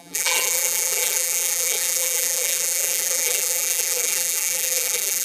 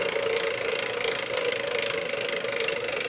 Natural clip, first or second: second